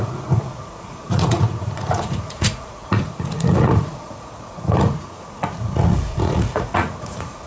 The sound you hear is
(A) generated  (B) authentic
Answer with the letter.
A